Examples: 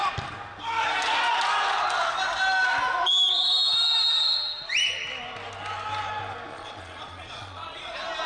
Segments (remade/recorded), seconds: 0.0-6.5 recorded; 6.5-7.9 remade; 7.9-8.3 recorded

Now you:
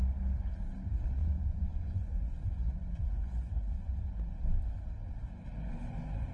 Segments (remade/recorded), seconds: 0.0-1.2 recorded; 1.2-4.0 remade; 4.0-5.5 recorded; 5.5-6.3 remade